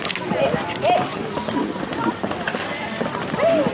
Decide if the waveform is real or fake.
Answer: real